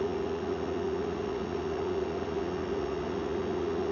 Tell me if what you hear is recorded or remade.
remade